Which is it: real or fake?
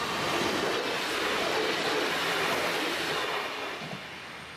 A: real